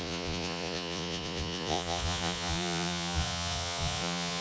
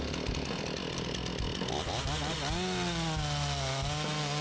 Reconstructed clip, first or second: first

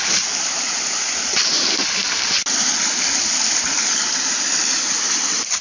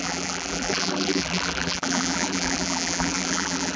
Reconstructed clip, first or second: second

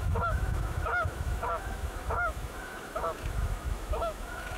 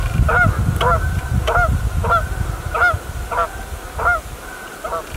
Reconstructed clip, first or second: first